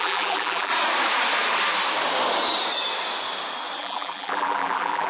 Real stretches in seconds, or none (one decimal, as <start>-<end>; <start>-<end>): 0.7-3.8